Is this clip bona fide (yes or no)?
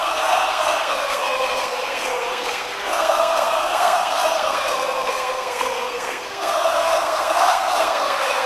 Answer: no